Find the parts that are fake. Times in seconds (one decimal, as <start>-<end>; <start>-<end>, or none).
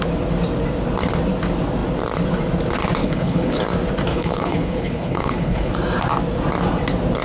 3.0-3.6; 4.1-5.7